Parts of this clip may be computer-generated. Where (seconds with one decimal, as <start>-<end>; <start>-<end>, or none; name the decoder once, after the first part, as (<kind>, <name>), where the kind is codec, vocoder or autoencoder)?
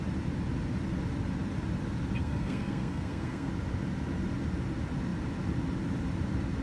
2.2-3.5 (codec, SNAC)